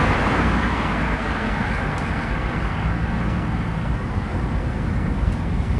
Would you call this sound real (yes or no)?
no